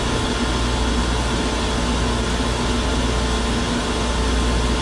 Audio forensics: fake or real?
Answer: real